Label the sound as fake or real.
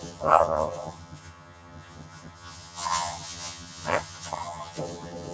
fake